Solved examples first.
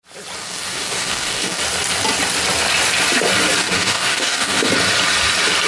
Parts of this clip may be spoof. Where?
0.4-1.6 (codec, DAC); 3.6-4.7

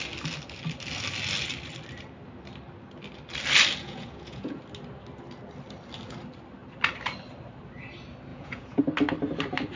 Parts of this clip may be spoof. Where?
3.8-4.6 (vocoder, Vocos); 8.3-8.8

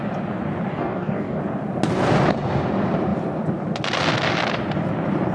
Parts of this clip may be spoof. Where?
0.7-1.4 (codec, DAC)

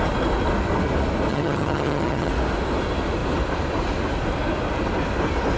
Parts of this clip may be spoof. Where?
1.3-2.3 (vocoder, HiFi-GAN)